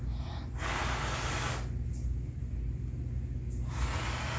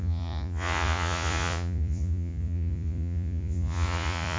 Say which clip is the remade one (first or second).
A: second